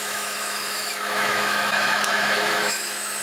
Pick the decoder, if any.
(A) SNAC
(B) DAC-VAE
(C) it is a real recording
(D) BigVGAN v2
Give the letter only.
B